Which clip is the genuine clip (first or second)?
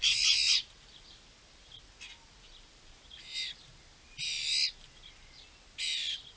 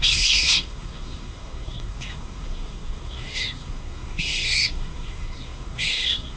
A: first